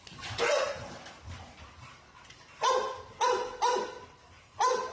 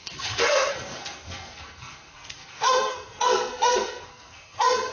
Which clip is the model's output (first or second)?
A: second